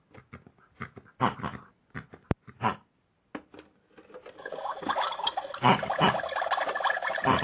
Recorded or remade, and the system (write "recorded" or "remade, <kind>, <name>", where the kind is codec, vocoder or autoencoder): recorded